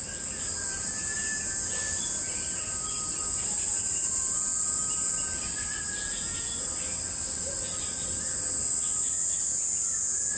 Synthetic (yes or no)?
no